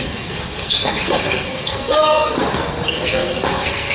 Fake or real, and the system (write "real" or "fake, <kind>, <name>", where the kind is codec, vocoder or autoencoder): fake, codec, SNAC